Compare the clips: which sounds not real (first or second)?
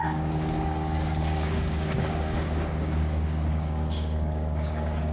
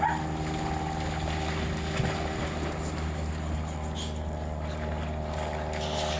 first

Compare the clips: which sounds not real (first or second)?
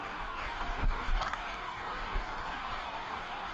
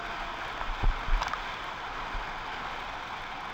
first